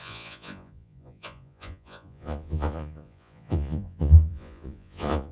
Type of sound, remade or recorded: remade